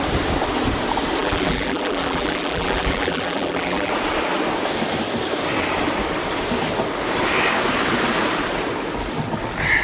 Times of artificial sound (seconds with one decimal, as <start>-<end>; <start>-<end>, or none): 1.2-3.9